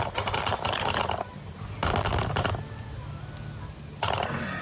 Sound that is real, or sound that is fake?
real